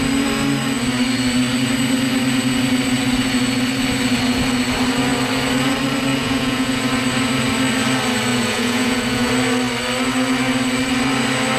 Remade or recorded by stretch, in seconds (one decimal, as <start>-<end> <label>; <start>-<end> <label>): 0.0-6.1 recorded; 6.1-6.8 remade; 6.8-8.3 recorded; 8.3-9.3 remade; 9.3-11.6 recorded

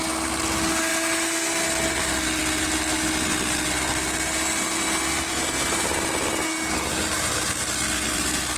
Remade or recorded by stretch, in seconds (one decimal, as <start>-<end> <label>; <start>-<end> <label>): 0.0-8.6 recorded

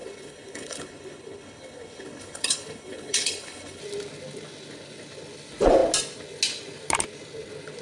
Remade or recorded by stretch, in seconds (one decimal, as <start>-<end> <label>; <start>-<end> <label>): 0.0-3.8 remade; 3.8-7.8 recorded

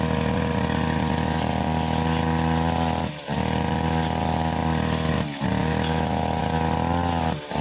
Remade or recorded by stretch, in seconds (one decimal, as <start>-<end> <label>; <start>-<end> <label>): 0.0-5.6 recorded; 5.6-6.4 remade; 6.4-7.6 recorded

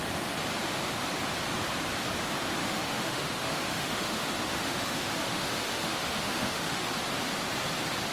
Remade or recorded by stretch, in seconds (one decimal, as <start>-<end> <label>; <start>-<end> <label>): 0.0-2.6 recorded; 2.6-6.9 remade; 6.9-8.1 recorded

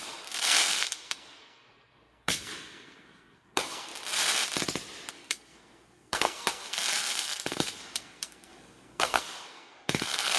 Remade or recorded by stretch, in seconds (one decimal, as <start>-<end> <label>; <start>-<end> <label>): 0.0-3.9 remade; 3.9-5.1 recorded; 5.1-10.4 remade

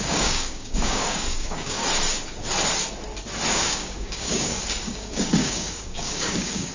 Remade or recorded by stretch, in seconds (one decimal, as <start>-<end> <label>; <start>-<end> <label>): 0.0-1.8 remade; 1.8-3.5 recorded; 3.5-6.7 remade

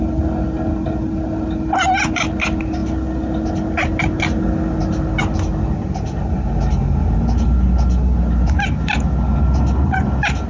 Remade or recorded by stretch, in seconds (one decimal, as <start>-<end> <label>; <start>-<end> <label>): 0.0-10.5 recorded